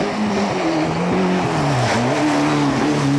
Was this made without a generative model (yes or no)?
yes